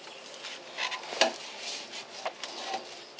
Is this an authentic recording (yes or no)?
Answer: yes